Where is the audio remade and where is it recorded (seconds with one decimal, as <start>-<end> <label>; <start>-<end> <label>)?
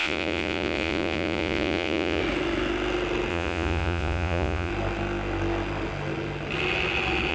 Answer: 0.0-2.2 remade; 2.2-3.3 recorded; 3.3-4.7 remade; 4.7-7.3 recorded